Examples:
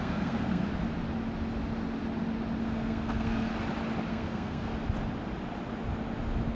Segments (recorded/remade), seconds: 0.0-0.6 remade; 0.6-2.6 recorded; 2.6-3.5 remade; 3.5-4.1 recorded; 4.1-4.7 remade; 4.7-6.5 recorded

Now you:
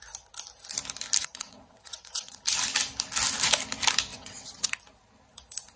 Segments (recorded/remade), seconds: 0.0-1.2 recorded; 1.2-2.4 remade; 2.4-4.1 recorded; 4.1-4.7 remade; 4.7-5.8 recorded

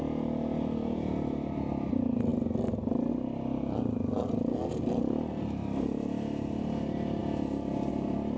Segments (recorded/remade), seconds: 0.0-8.4 recorded

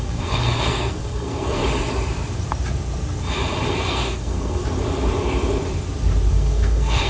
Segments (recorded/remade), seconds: 0.0-1.6 remade; 1.6-3.7 recorded; 3.7-4.6 remade; 4.6-6.3 recorded; 6.3-7.1 remade

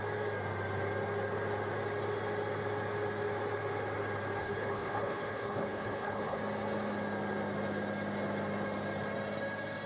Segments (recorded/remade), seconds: 0.0-4.4 recorded; 4.4-6.4 remade; 6.4-9.9 recorded

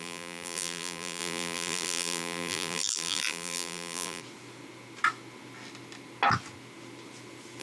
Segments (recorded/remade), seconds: 0.0-4.2 remade; 4.2-7.6 recorded

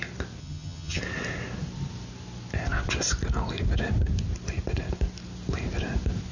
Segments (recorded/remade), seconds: 0.0-0.4 recorded; 0.4-1.0 remade; 1.0-6.3 recorded

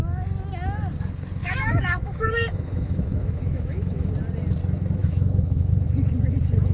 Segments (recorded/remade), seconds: 0.0-1.4 recorded; 1.4-4.1 remade; 4.1-5.0 recorded; 5.0-5.7 remade; 5.7-6.7 recorded